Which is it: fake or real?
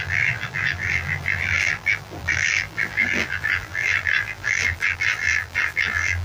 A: fake